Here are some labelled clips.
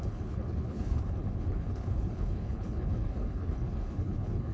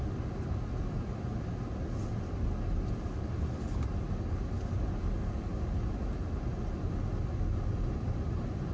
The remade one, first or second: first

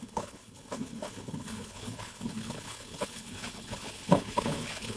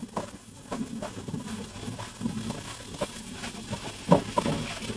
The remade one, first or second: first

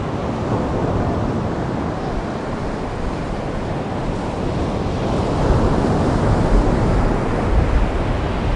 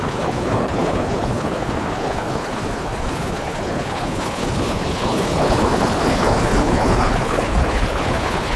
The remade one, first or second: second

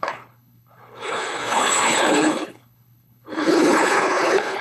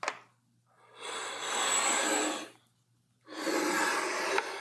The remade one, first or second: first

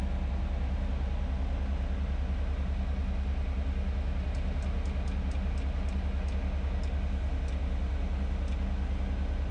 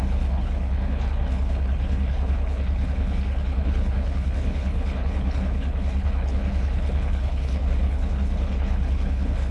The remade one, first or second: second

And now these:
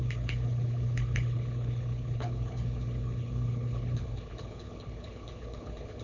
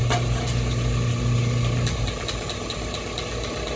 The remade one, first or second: first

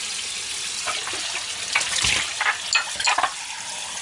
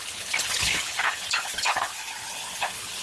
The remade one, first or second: second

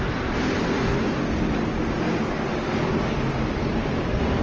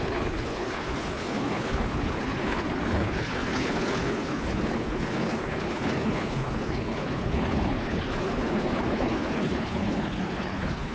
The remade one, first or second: second